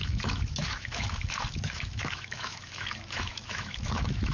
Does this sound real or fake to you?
fake